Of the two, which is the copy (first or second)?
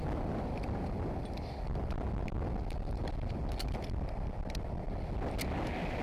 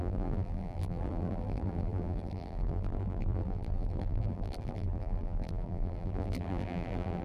second